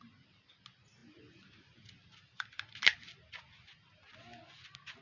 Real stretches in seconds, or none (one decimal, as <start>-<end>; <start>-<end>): 0.0-1.0; 4.0-5.0